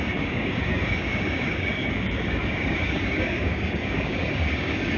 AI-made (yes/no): yes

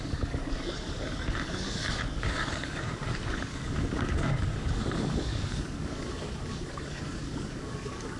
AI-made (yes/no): yes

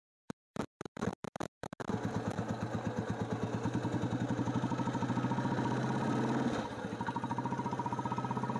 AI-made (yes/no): no